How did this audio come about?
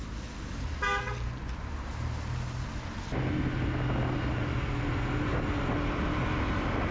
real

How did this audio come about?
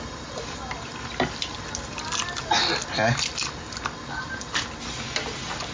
real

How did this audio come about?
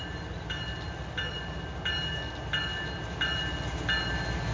real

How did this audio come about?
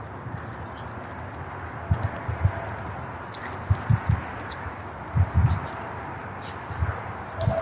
real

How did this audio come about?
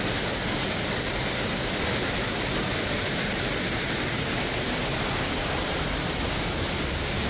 real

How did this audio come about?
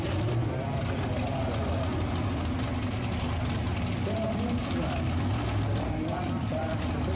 real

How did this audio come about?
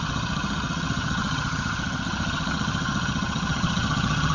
fake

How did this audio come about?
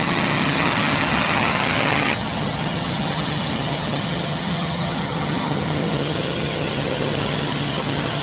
fake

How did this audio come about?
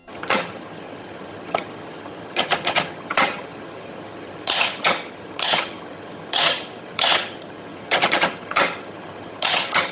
fake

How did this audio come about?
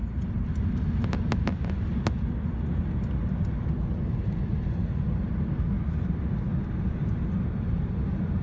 real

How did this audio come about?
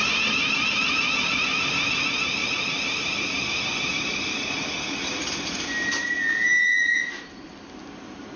real